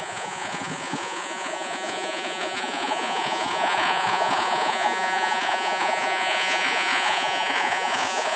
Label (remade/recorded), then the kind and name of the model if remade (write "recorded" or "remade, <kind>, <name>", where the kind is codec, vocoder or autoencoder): remade, vocoder, Vocos